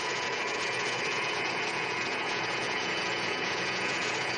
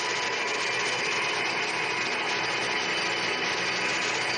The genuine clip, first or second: second